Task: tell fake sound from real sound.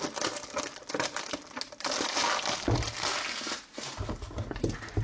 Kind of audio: real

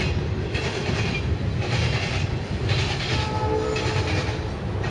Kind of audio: real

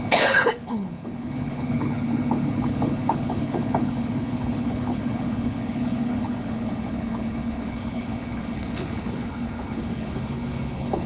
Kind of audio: fake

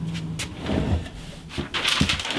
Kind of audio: real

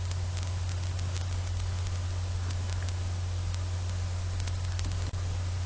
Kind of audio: real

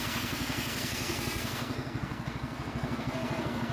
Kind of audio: fake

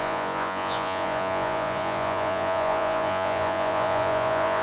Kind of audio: fake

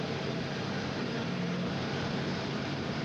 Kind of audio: fake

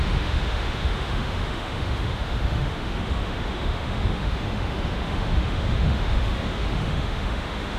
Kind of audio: fake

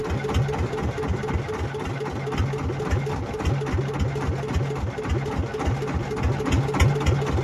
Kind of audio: real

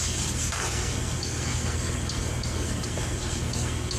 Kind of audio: fake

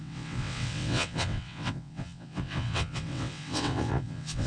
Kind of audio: fake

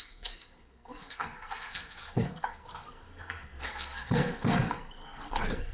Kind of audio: fake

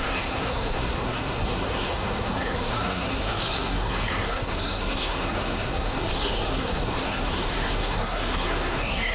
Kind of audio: fake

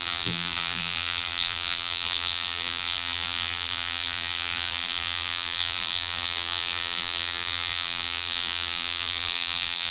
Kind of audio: fake